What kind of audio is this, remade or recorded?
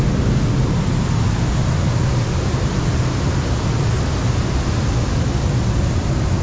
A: recorded